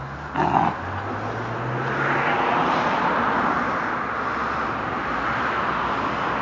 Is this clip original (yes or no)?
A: yes